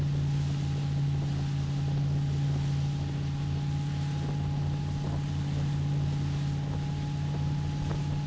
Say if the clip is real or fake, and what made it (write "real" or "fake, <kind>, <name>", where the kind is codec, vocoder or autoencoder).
real